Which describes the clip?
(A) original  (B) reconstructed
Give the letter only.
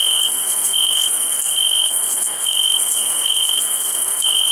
B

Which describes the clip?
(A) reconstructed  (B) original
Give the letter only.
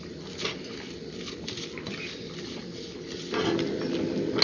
B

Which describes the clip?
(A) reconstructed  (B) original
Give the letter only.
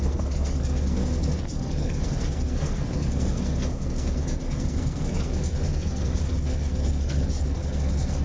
A